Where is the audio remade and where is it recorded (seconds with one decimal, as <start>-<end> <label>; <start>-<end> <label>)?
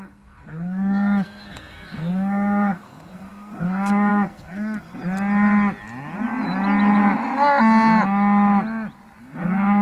0.0-5.0 remade; 5.0-9.2 recorded; 9.2-9.8 remade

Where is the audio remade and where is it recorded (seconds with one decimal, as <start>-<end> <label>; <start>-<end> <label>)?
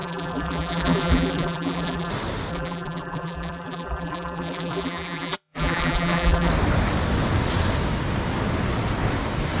0.0-2.1 remade; 2.1-2.5 recorded; 2.5-6.5 remade; 6.5-9.6 recorded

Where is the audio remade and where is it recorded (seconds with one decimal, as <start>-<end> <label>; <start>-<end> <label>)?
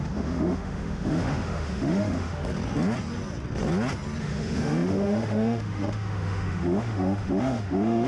0.0-2.5 remade; 2.5-4.2 recorded; 4.2-8.1 remade